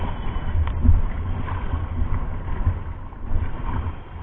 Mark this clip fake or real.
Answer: real